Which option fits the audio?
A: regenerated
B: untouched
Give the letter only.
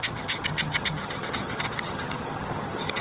A